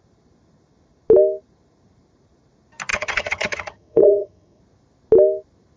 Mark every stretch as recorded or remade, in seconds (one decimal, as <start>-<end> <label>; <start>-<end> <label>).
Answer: 0.0-2.9 recorded; 2.9-4.6 remade; 4.6-5.8 recorded

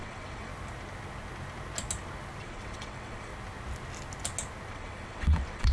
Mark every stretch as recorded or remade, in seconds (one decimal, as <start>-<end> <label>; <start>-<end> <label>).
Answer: 0.0-0.5 remade; 0.5-2.4 recorded; 2.4-3.3 remade; 3.3-4.7 recorded; 4.7-5.7 remade

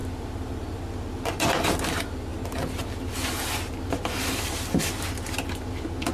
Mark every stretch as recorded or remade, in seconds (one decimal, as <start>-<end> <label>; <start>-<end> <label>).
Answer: 0.0-6.1 recorded